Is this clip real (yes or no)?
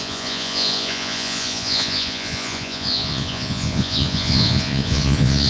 no